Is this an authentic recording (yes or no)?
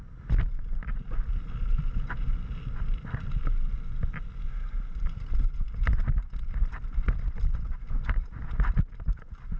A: yes